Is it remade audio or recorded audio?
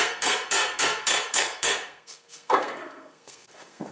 remade